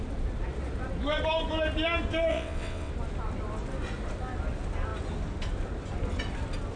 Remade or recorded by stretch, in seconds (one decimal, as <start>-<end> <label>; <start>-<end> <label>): 0.0-2.3 recorded; 2.3-2.9 remade; 2.9-6.8 recorded